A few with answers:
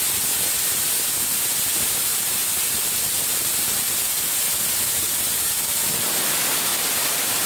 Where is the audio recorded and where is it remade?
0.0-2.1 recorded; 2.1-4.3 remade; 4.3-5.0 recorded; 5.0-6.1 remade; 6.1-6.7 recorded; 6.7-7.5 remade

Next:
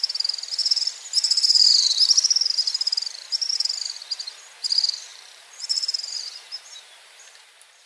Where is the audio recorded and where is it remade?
0.0-5.1 recorded; 5.1-7.9 remade

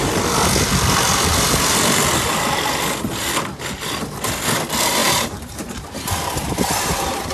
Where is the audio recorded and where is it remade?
0.0-5.0 recorded; 5.0-7.3 remade

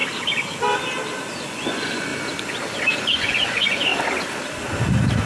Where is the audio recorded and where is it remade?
0.0-1.4 recorded; 1.4-2.1 remade; 2.1-3.0 recorded; 3.0-3.9 remade; 3.9-5.3 recorded

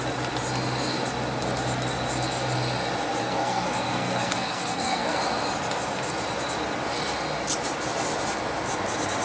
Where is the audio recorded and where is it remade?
0.0-3.2 recorded; 3.2-5.2 remade; 5.2-9.2 recorded

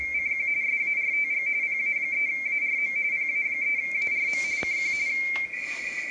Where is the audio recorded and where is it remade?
0.0-6.1 recorded